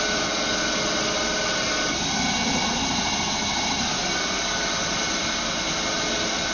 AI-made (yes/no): no